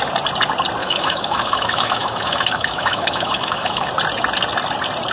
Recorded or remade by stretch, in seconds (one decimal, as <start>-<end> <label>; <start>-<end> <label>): 0.0-0.8 recorded; 0.8-3.9 remade; 3.9-5.1 recorded